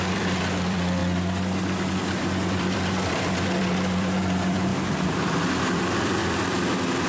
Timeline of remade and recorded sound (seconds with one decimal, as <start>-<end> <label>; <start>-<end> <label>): 0.0-1.0 remade; 1.0-2.5 recorded; 2.5-7.1 remade